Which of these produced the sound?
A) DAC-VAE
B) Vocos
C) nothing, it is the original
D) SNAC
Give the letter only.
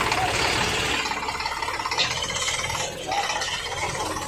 C